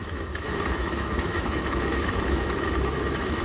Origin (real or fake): fake